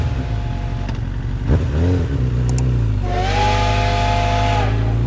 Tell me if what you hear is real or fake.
real